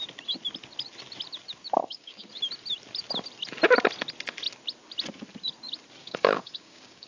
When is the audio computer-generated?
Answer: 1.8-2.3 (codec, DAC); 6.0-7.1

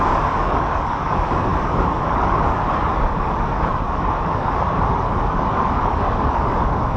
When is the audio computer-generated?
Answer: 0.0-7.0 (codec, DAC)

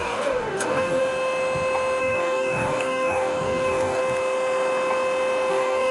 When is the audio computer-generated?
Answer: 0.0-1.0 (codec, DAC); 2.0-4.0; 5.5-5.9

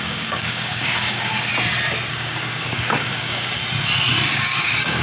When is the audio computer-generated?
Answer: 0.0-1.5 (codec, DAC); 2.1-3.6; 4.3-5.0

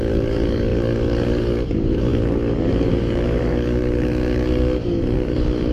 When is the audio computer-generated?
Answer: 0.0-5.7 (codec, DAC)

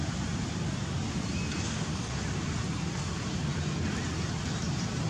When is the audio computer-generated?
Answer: 1.6-2.2 (codec, DAC)